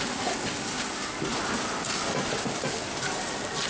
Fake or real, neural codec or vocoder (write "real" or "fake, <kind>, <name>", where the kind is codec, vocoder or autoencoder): real